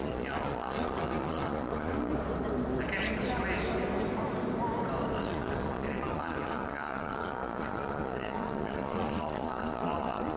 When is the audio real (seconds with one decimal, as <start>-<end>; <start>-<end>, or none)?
2.1-5.2